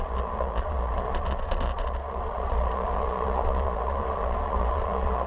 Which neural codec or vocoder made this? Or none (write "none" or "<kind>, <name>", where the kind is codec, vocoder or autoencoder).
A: vocoder, Vocos